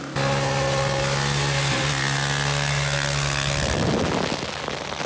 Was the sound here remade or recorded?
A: recorded